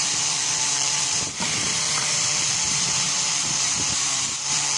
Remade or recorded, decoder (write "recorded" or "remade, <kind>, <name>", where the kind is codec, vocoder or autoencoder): remade, vocoder, BigVGAN v2